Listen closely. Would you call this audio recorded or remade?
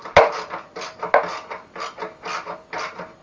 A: recorded